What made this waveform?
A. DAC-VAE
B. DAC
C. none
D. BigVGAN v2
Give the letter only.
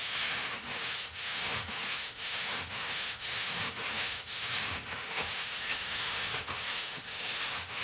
A